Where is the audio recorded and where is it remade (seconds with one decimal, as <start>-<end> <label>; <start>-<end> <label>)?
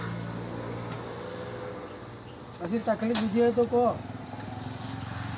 0.0-5.4 recorded